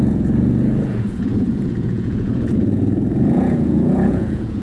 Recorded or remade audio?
remade